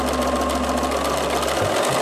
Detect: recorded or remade recorded